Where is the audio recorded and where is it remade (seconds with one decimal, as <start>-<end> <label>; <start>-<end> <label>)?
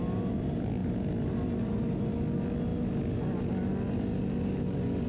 0.0-5.1 recorded